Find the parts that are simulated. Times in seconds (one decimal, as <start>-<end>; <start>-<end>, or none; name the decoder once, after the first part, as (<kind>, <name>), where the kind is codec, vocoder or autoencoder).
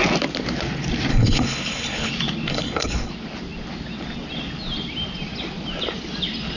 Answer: 1.1-2.1 (codec, HILCodec); 2.5-3.1